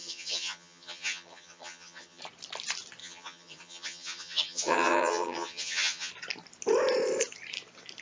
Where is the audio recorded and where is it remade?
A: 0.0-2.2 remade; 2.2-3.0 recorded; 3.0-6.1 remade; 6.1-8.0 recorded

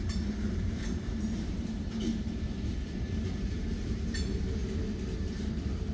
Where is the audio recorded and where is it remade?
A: 0.0-4.6 remade; 4.6-5.2 recorded; 5.2-5.9 remade